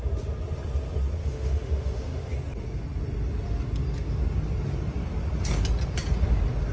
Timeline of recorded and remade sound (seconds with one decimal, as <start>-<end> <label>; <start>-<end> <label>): 0.0-1.2 recorded; 1.2-2.3 remade; 2.3-6.7 recorded